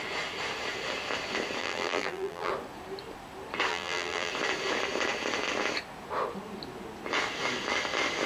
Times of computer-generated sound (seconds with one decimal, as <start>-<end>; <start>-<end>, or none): 1.6-2.5; 3.7-4.3